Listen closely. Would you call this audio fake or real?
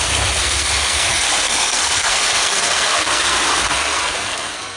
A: fake